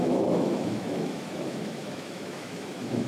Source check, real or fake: fake